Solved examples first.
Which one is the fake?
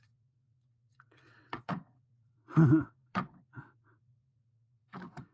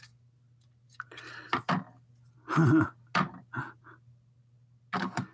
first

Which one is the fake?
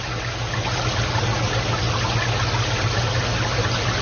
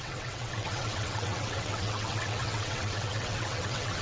second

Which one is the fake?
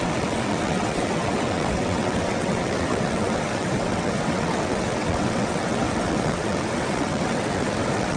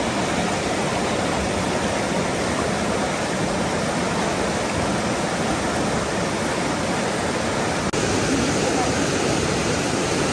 first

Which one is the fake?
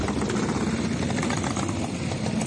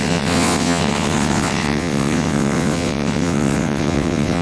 second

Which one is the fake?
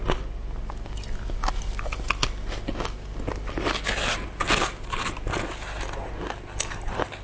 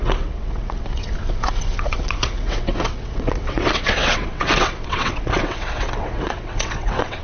second